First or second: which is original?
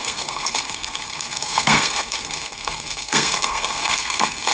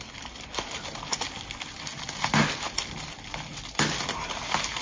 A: second